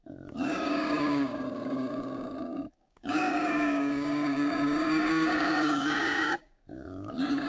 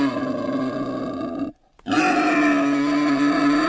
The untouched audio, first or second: second